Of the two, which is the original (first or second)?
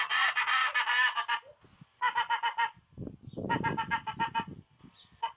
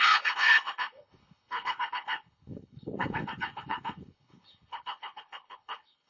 first